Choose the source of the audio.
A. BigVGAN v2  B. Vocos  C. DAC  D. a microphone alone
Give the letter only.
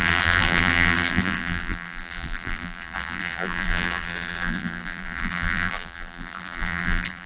A